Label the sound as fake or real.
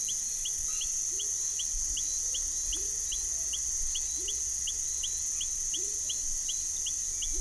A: real